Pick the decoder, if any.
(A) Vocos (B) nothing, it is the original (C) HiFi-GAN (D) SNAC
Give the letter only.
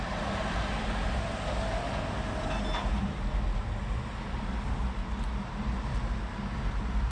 B